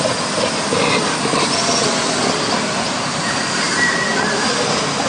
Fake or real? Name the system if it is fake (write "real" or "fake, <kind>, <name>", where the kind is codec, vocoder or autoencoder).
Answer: real